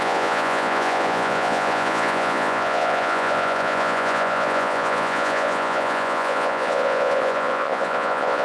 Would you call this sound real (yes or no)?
no